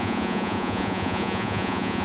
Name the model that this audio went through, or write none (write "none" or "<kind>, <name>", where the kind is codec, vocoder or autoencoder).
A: vocoder, Vocos